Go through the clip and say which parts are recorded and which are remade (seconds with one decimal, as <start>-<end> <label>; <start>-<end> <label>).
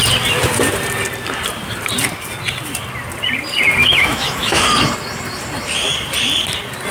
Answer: 0.0-3.8 recorded; 3.8-4.6 remade; 4.6-6.9 recorded